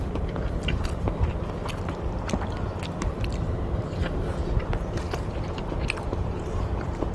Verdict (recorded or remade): remade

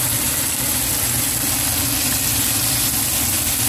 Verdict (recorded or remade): recorded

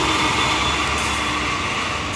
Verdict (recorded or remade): recorded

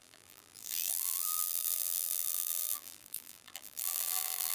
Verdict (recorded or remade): remade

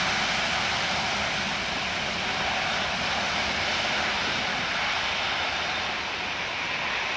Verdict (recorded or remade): recorded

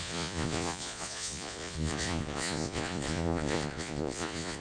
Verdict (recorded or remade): remade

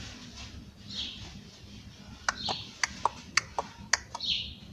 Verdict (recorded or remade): recorded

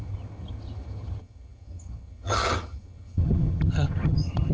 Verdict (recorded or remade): remade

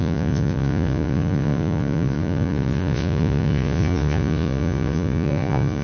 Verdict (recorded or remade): remade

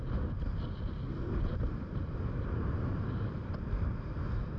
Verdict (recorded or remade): recorded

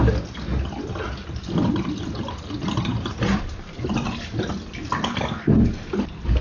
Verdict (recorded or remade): recorded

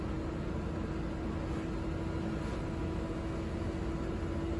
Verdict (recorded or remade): recorded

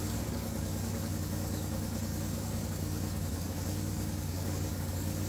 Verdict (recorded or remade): remade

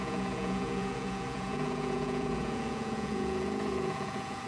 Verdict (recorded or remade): remade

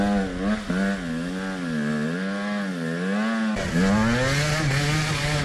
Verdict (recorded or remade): recorded